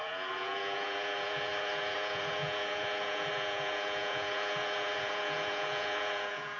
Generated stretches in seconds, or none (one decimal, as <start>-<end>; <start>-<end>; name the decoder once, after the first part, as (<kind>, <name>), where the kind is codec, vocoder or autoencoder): 0.0-6.6 (vocoder, Vocos)